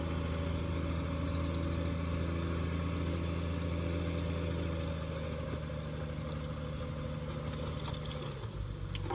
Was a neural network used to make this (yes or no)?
no